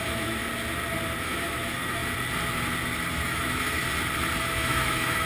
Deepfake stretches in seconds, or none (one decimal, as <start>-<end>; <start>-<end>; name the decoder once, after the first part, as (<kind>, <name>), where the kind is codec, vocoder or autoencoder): 0.0-0.4 (autoencoder, DAC-VAE); 1.2-2.0; 3.1-3.8; 4.4-5.3